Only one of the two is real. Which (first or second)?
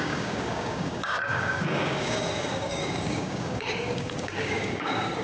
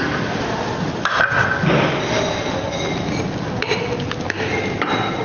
second